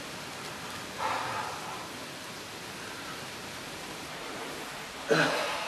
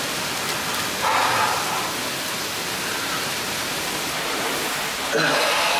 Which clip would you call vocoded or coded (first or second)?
first